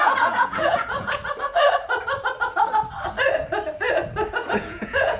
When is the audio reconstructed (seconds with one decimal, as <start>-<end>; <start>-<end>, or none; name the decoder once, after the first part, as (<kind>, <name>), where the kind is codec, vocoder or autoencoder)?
0.0-1.2 (vocoder, Vocos); 4.3-5.2